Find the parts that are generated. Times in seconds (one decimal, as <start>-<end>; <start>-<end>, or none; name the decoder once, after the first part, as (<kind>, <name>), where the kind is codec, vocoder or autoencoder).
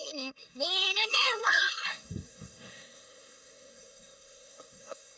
0.0-5.2 (codec, SNAC)